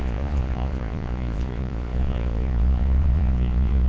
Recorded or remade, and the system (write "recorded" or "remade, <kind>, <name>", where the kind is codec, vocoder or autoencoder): remade, vocoder, Vocos